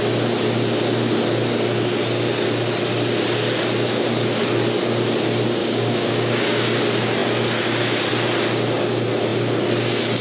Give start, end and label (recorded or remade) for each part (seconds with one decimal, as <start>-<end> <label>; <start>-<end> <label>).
0.0-5.6 recorded; 5.6-6.8 remade; 6.8-10.2 recorded